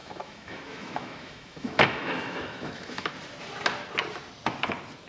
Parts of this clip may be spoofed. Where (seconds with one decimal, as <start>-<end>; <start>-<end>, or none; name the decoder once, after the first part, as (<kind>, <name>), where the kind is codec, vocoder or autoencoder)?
0.0-3.1 (autoencoder, DAC-VAE)